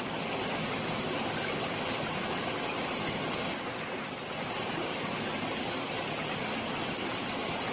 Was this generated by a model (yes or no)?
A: no